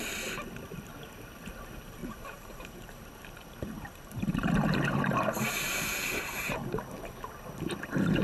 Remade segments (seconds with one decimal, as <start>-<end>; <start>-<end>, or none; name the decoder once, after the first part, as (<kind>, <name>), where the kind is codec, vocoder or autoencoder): 2.0-6.8 (vocoder, BigVGAN v2)